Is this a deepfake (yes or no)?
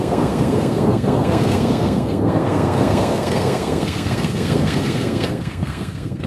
yes